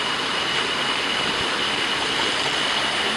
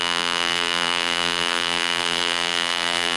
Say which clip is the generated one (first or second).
second